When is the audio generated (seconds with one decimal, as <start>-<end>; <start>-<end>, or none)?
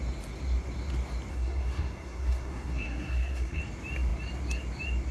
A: 1.3-3.6